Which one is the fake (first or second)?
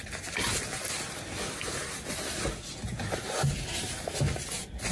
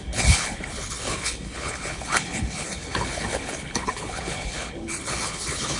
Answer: second